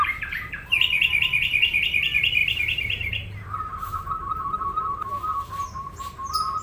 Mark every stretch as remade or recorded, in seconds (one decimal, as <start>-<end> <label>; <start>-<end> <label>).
0.0-2.4 recorded; 2.4-6.0 remade; 6.0-6.6 recorded